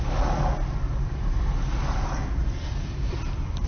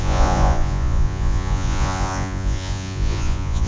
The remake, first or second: second